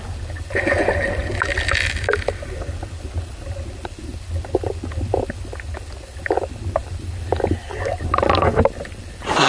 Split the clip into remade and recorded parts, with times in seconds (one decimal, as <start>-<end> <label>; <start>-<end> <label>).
0.0-9.5 recorded